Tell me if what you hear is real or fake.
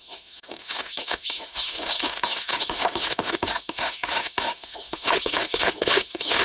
fake